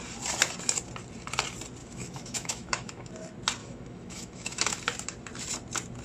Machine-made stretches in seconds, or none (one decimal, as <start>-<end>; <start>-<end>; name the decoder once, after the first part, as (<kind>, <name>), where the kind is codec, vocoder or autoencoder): 1.8-3.1 (autoencoder, DAC-VAE); 3.6-4.8